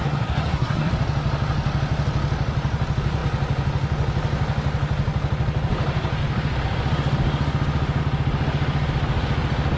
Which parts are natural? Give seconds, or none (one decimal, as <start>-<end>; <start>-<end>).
0.9-9.8